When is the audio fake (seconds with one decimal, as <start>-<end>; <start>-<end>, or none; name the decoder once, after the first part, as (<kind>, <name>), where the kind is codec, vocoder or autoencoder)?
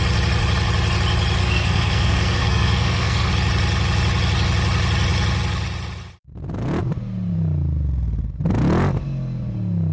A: 1.4-3.3 (codec, SNAC)